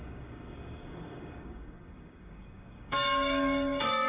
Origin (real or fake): fake